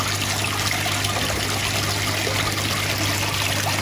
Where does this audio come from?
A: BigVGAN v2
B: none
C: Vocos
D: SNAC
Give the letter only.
B